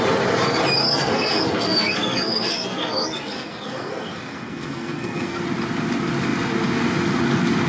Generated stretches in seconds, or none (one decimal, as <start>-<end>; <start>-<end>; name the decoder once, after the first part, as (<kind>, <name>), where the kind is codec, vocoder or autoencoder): 0.8-5.4 (codec, SNAC)